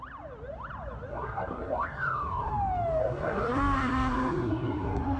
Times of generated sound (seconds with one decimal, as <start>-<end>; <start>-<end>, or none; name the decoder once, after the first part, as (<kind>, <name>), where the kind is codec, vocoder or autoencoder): 1.1-2.5 (codec, SNAC); 3.0-5.2